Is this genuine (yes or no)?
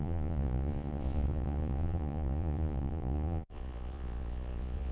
no